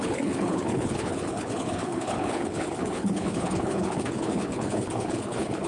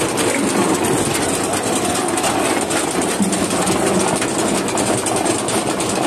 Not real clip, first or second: first